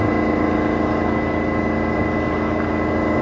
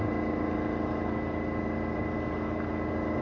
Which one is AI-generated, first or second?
second